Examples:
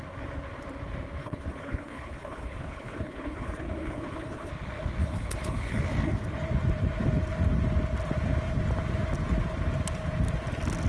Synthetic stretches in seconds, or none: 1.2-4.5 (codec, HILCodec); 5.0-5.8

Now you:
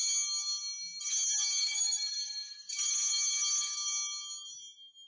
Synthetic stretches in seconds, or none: 1.6-2.7 (codec, DAC)

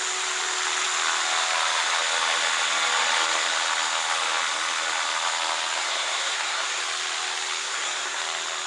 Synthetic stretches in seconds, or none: 5.8-6.8 (codec, SNAC); 7.6-8.2

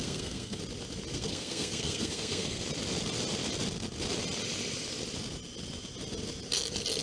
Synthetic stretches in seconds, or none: 0.0-0.6 (codec, SNAC); 1.1-2.6

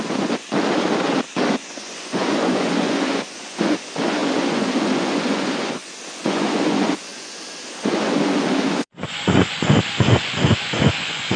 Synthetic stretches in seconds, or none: 0.0-0.5 (vocoder, Vocos); 1.5-11.4